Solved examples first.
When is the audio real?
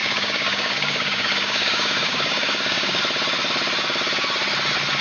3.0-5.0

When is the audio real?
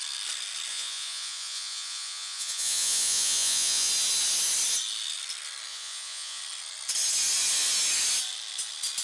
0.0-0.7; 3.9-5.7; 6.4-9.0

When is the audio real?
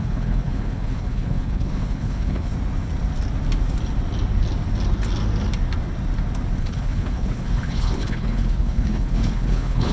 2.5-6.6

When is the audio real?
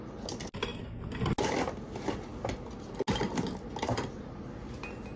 0.0-5.2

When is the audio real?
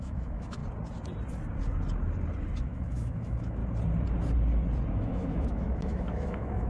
0.6-2.6; 3.6-4.9